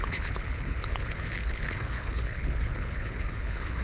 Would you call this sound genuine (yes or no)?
no